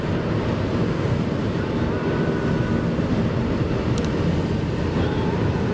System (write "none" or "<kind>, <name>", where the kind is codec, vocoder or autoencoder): none